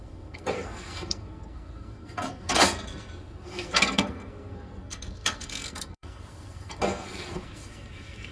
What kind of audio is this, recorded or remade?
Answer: remade